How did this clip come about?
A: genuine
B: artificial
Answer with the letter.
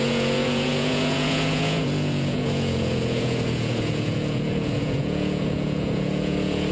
B